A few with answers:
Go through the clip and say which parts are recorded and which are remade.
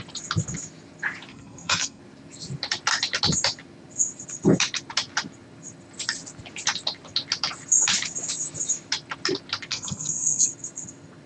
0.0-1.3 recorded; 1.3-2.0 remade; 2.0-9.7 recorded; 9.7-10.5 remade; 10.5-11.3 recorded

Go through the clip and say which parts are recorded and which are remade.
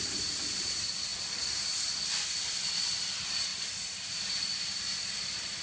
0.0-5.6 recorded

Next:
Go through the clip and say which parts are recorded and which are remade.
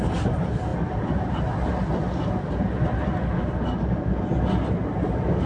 0.0-5.5 recorded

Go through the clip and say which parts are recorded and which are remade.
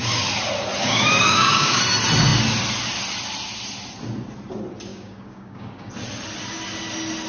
0.0-0.8 recorded; 0.8-1.8 remade; 1.8-4.9 recorded; 4.9-5.9 remade; 5.9-7.3 recorded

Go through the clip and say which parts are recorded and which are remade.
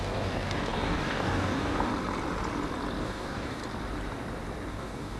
0.0-1.9 remade; 1.9-3.0 recorded; 3.0-3.6 remade; 3.6-4.7 recorded; 4.7-5.2 remade